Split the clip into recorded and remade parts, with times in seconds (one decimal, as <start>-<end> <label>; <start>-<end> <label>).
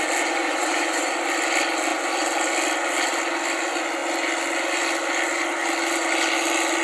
0.0-0.5 recorded; 0.5-1.1 remade; 1.1-6.8 recorded